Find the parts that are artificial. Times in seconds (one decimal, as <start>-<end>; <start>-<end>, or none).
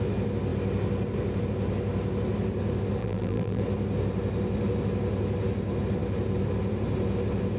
3.0-3.6